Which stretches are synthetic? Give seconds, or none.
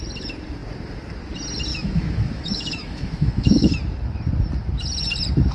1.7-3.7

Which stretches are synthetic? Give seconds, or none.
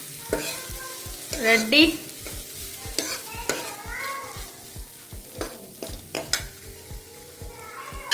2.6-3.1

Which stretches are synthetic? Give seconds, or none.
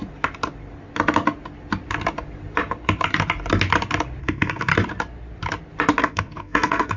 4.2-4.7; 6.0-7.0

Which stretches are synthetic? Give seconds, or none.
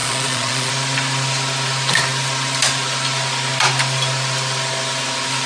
0.0-0.7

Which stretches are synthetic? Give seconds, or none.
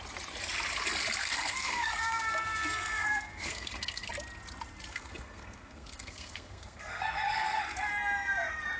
1.2-4.1; 4.9-7.6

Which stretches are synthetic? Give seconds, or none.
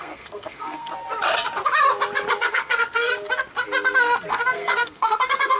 0.0-0.9; 2.4-3.1; 4.3-5.6